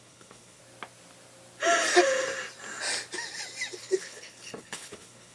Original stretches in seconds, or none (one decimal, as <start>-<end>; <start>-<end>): 0.6-3.8